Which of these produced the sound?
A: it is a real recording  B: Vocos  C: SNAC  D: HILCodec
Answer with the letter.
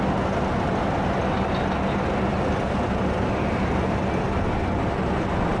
A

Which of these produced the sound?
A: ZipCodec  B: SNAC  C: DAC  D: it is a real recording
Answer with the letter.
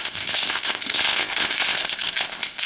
A